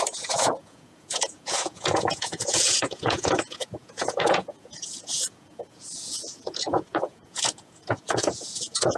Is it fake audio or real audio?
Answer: fake